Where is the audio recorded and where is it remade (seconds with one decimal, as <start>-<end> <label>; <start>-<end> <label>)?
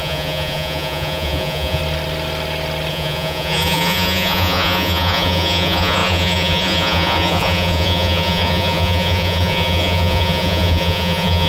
0.0-1.8 remade; 1.8-2.9 recorded; 2.9-11.5 remade